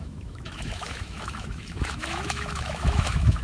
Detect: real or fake fake